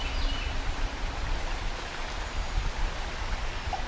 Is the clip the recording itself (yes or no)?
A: yes